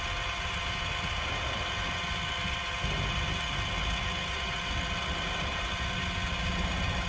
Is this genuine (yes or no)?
yes